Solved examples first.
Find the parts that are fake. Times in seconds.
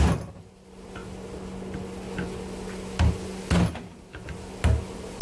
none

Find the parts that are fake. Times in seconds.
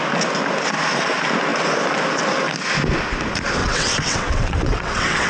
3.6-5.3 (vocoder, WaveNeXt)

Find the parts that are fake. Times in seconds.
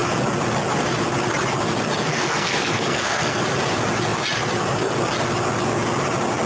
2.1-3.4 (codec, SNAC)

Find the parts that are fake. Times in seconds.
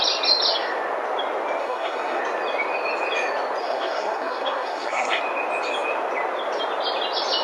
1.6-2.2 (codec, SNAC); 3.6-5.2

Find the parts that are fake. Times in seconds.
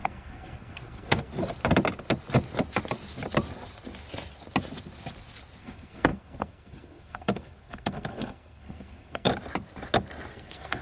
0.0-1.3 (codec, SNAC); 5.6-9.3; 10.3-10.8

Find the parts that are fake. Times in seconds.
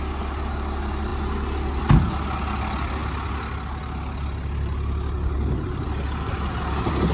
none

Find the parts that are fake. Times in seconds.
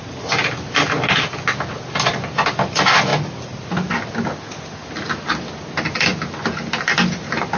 none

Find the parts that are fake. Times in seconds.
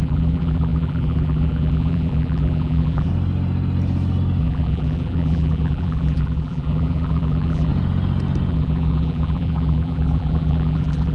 0.0-3.1 (vocoder, BigVGAN v2); 4.4-7.7; 8.5-11.1